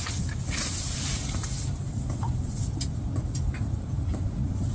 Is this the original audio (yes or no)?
yes